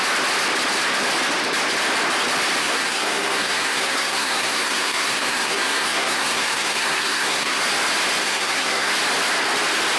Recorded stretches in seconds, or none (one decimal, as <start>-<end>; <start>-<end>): 0.0-2.6; 7.6-8.2; 8.9-10.0